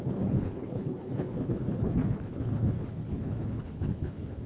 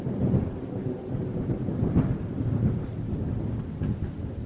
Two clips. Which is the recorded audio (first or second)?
second